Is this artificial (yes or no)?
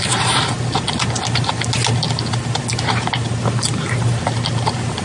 no